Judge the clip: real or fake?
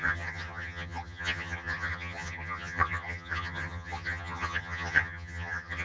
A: fake